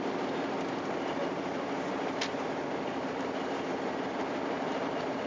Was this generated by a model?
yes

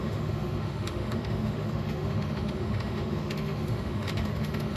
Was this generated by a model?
yes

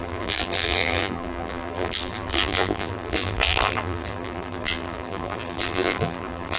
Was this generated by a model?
yes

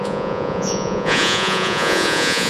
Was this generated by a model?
yes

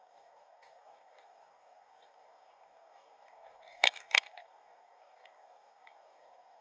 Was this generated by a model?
yes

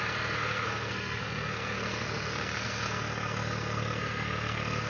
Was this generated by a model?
yes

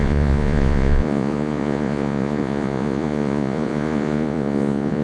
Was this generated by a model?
yes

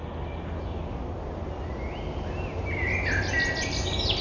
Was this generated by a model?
no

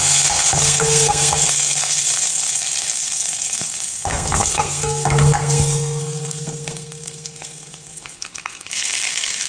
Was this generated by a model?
yes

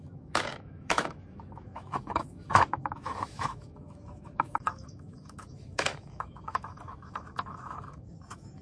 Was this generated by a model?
yes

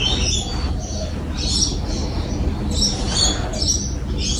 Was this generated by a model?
no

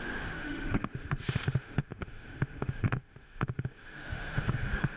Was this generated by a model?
yes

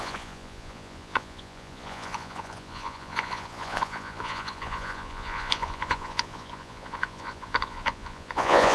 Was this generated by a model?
yes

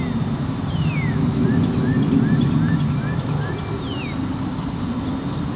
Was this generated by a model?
no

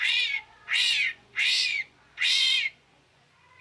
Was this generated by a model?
yes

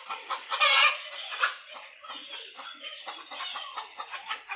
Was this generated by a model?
yes